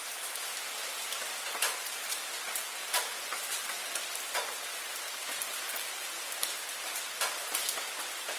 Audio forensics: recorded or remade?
recorded